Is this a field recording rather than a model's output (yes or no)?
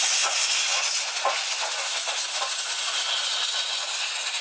yes